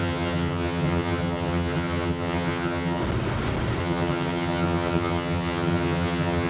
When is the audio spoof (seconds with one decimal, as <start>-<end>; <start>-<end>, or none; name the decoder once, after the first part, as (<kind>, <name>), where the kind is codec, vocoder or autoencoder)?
0.0-3.0 (vocoder, HiFi-GAN); 3.8-6.5